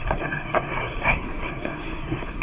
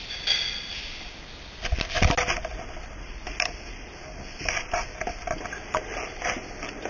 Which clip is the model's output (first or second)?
first